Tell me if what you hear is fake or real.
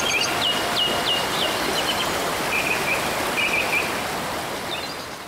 real